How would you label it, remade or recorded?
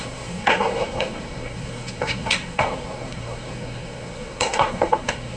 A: remade